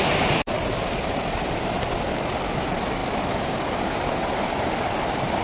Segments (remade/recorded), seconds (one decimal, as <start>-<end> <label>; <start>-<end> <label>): 0.0-5.4 recorded